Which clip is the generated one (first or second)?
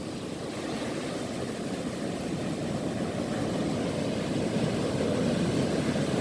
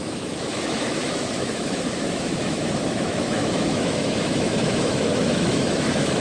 second